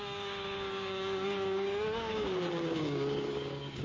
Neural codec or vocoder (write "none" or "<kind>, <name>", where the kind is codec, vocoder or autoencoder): codec, DAC